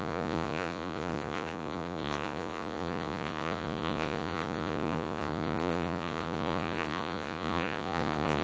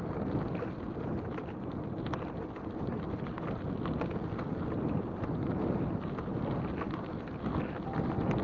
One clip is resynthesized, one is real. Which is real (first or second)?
second